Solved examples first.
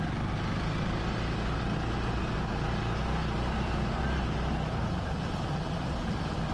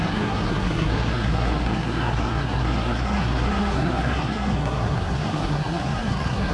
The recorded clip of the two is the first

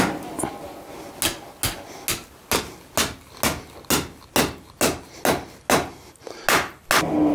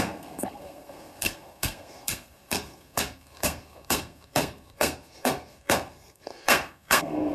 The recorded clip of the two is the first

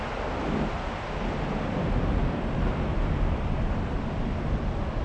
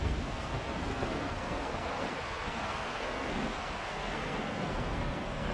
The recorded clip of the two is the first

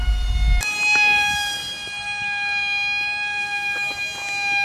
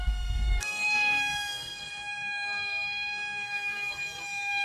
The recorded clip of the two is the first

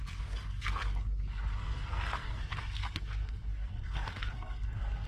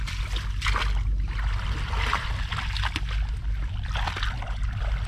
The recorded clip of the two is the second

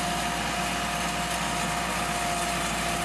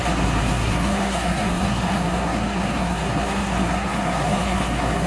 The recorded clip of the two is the first